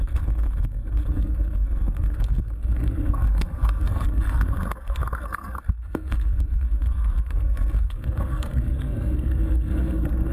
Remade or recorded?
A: remade